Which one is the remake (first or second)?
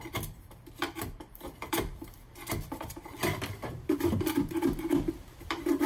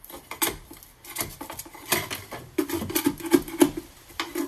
first